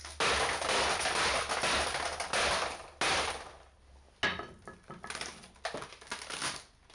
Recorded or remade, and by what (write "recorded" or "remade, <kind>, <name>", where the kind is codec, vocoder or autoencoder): recorded